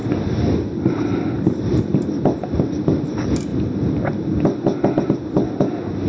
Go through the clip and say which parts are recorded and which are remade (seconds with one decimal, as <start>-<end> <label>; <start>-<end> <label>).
0.0-2.2 remade; 2.2-6.1 recorded

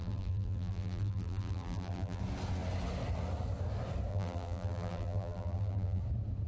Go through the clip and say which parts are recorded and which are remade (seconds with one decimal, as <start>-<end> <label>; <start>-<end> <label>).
0.0-2.2 remade; 2.2-4.1 recorded; 4.1-6.0 remade; 6.0-6.5 recorded

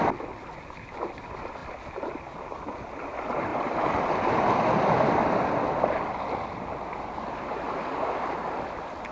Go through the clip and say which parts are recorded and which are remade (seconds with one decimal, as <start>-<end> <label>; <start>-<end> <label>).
0.0-9.1 recorded

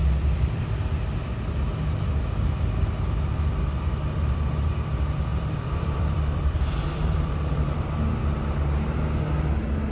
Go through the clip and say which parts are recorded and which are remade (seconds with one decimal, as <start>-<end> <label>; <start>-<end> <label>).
0.0-0.9 remade; 0.9-5.3 recorded; 5.3-8.1 remade; 8.1-9.9 recorded